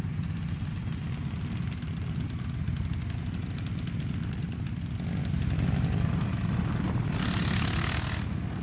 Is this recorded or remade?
recorded